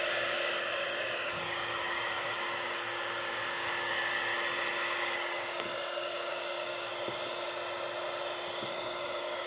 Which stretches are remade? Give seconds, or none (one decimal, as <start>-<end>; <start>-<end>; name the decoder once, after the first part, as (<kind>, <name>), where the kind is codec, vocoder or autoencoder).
0.0-4.3 (codec, DAC); 5.0-6.9; 8.7-9.5